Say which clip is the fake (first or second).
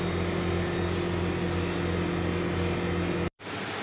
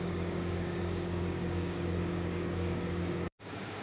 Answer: second